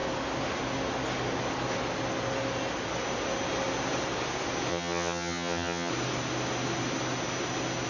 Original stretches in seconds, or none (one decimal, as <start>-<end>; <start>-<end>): 0.0-4.7; 5.9-7.9